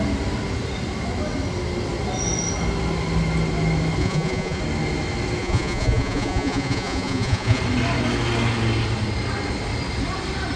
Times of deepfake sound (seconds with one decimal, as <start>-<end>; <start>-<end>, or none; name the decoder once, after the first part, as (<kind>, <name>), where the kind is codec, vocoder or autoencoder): 4.0-4.6 (vocoder, Vocos); 5.4-7.6